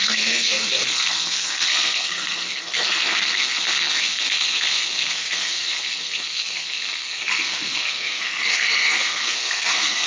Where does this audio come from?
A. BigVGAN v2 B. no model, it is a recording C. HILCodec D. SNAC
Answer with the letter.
D